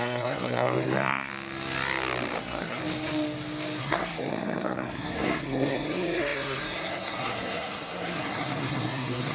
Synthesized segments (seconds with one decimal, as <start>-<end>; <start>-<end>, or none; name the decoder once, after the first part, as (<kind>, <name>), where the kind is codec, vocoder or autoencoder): 0.0-1.3 (codec, SNAC); 2.4-2.8; 3.8-9.3